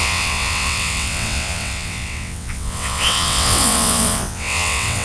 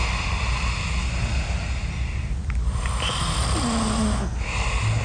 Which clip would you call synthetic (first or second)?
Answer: first